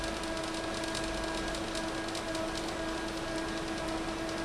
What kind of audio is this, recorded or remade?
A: recorded